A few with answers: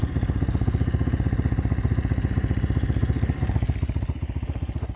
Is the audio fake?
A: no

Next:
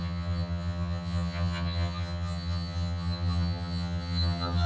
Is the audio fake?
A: yes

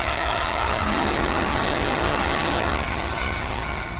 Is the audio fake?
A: yes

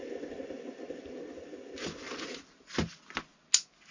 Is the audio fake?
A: no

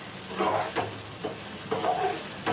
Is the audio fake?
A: no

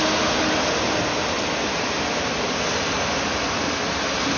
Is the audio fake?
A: no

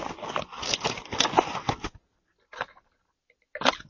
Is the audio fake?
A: no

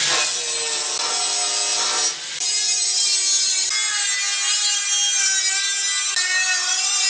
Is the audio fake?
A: no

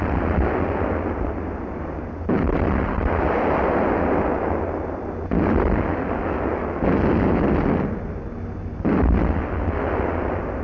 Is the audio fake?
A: no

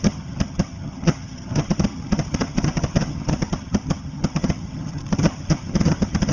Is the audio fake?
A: yes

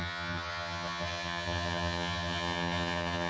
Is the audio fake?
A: yes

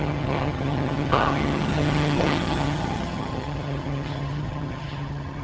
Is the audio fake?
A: yes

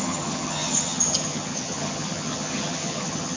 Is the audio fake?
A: yes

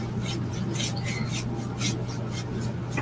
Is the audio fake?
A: no